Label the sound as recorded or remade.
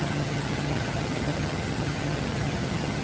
remade